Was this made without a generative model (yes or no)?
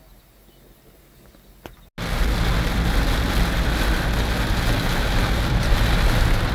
yes